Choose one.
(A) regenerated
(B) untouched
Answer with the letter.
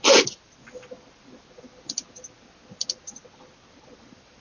B